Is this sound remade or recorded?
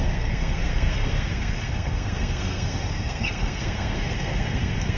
remade